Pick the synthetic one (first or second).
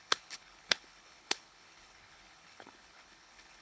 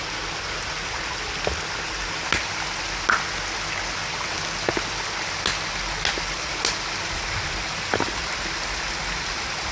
first